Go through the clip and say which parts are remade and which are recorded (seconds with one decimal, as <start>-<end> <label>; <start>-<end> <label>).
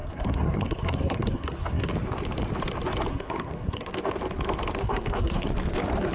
0.0-1.9 remade; 1.9-3.1 recorded; 3.1-3.9 remade; 3.9-4.8 recorded; 4.8-5.5 remade; 5.5-6.1 recorded